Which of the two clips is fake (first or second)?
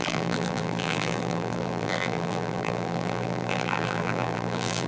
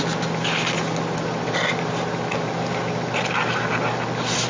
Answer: first